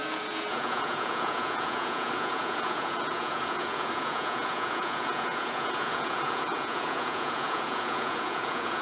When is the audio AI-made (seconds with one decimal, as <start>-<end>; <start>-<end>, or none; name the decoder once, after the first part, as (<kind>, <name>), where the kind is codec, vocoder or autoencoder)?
0.0-8.8 (vocoder, Vocos)